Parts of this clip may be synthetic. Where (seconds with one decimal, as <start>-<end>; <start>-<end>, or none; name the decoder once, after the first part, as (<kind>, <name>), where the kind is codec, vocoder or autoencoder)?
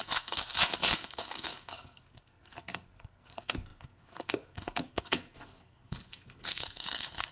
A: 0.0-7.3 (codec, SNAC)